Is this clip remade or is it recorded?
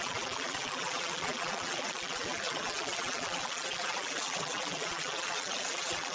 remade